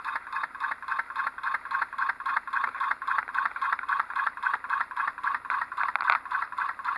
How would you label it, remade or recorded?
recorded